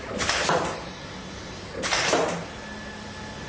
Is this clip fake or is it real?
real